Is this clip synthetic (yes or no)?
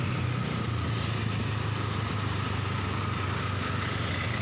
no